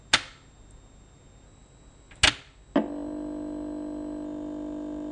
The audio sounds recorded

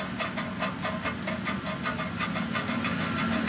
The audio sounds recorded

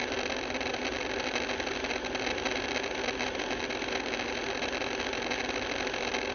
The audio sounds recorded